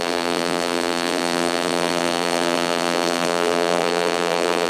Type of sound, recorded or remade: remade